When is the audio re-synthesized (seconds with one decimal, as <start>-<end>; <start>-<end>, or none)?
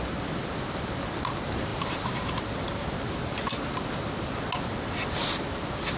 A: none